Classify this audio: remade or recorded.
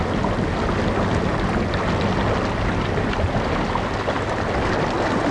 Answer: recorded